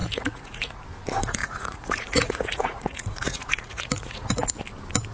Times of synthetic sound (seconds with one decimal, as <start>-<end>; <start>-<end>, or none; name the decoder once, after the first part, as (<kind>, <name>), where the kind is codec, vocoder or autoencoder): 0.0-0.8 (vocoder, Vocos); 1.4-4.5